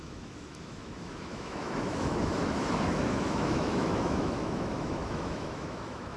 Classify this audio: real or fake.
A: fake